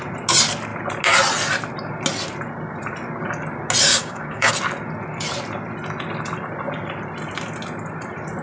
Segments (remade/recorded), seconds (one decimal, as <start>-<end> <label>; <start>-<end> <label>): 0.0-3.9 recorded; 3.9-4.5 remade; 4.5-8.4 recorded